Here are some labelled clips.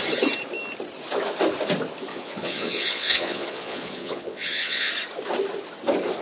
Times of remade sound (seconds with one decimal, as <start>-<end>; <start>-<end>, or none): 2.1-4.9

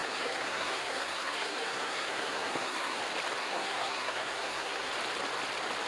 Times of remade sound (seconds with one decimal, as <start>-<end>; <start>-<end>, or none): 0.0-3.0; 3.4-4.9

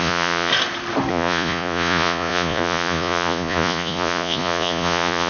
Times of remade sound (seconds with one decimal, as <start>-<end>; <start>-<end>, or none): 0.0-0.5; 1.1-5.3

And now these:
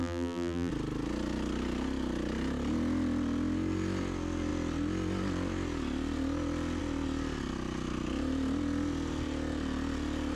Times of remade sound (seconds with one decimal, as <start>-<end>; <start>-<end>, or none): 0.0-0.7

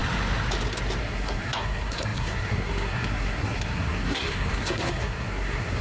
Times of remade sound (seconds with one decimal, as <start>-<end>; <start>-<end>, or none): 1.0-5.8

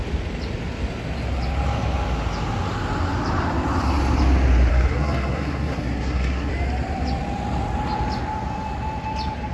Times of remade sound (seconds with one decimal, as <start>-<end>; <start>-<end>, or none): 4.7-6.5

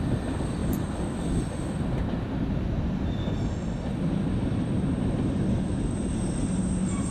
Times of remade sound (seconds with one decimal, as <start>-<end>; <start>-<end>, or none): none

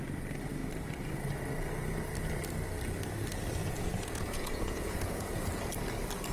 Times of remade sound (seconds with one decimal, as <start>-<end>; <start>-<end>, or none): 3.6-5.5